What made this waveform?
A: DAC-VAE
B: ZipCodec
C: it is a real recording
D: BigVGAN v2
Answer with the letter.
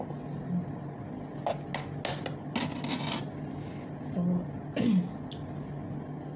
C